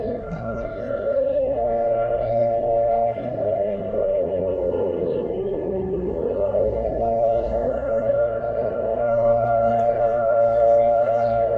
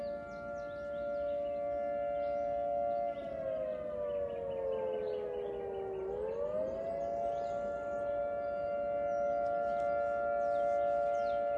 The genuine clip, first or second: second